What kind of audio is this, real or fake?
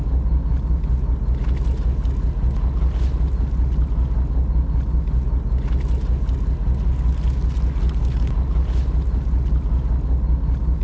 real